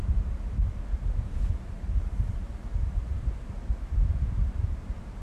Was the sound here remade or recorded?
remade